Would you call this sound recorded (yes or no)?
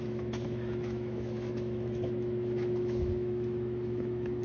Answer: no